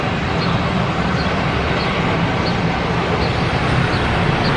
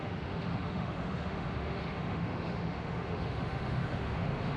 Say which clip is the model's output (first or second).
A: second